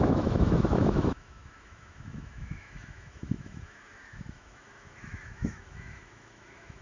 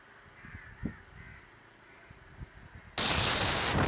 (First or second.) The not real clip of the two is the first